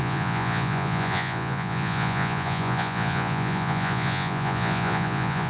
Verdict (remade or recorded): remade